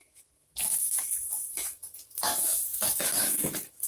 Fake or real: fake